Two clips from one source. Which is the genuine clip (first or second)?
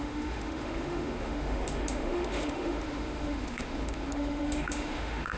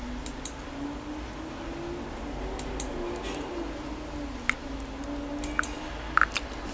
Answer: second